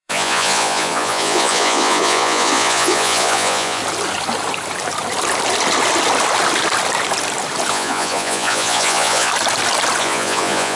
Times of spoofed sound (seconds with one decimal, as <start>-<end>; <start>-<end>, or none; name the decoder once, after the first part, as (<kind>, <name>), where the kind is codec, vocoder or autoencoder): 0.0-3.8 (vocoder, Vocos); 7.7-9.3; 10.0-10.8